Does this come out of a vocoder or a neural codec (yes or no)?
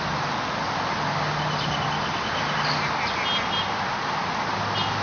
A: no